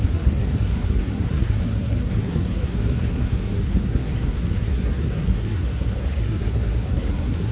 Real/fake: fake